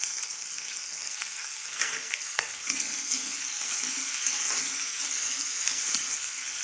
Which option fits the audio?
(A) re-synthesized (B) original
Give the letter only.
A